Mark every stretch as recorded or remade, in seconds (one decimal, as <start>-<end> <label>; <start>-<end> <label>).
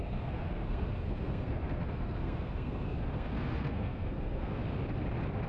0.0-4.6 remade; 4.6-5.5 recorded